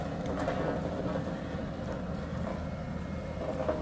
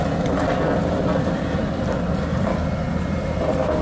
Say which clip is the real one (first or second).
first